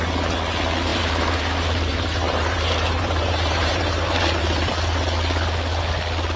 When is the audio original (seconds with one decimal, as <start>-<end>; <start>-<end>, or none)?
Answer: 0.0-0.9; 4.7-6.4